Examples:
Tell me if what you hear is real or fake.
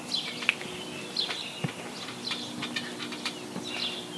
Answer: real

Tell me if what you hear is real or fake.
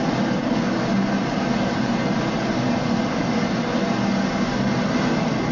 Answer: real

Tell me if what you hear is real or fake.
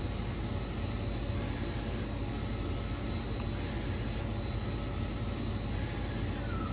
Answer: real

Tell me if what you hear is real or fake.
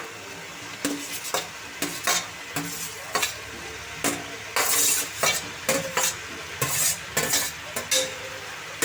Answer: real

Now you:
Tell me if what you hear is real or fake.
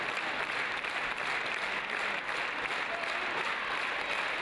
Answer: real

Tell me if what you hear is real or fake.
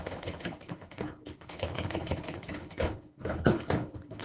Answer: fake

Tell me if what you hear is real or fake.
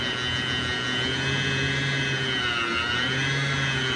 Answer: real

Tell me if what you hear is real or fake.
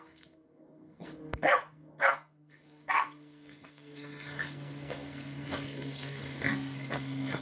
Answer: fake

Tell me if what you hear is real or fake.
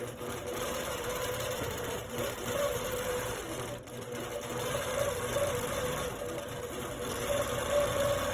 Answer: real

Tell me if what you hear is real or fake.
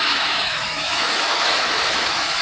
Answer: fake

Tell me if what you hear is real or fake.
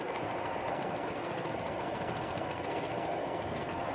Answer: fake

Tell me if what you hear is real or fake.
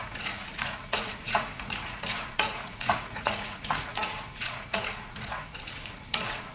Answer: fake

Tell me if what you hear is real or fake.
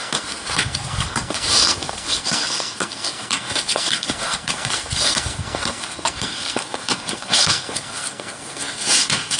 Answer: fake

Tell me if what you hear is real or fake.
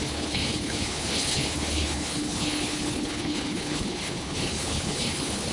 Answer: fake